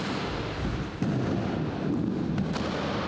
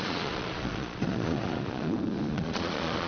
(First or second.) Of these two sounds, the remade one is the second